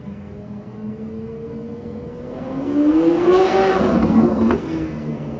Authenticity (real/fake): fake